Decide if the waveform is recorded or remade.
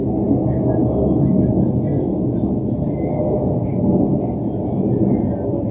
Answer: recorded